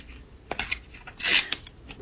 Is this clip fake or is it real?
real